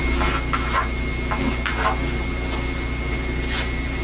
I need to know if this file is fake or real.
real